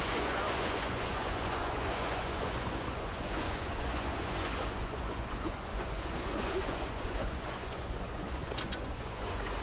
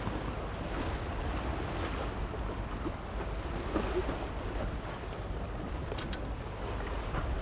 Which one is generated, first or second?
first